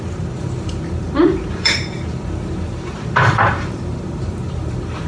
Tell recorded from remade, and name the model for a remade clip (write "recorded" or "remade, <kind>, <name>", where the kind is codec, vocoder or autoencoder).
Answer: remade, vocoder, BigVGAN v2